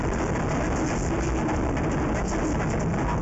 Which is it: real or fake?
real